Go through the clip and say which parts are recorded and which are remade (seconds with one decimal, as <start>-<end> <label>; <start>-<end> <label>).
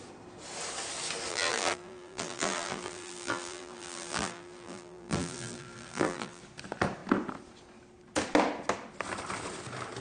0.0-1.3 recorded; 1.3-6.4 remade; 6.4-10.0 recorded